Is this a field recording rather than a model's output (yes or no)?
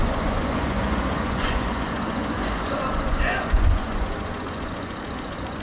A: no